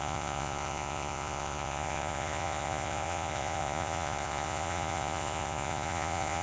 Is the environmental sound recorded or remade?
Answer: remade